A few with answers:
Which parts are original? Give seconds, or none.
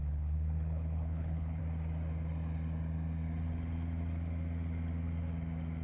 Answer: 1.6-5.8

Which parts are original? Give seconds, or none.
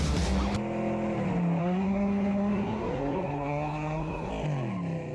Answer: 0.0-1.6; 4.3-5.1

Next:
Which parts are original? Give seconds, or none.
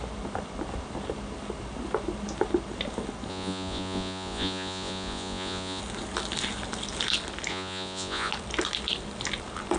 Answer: 0.0-3.3; 5.8-7.5; 8.3-9.8